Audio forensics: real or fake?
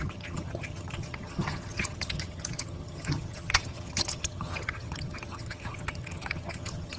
fake